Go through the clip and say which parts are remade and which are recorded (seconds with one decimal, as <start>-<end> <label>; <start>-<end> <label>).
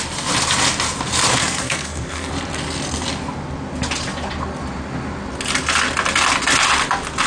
0.0-1.4 recorded; 1.4-2.3 remade; 2.3-7.3 recorded